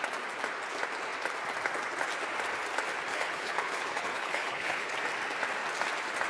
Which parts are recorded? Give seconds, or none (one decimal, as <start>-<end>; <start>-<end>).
0.0-3.1; 4.9-6.3